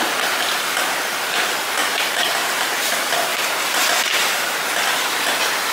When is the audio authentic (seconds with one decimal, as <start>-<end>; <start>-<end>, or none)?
0.0-1.8; 2.9-3.3; 3.8-5.7